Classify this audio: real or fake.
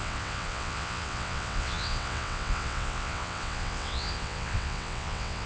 fake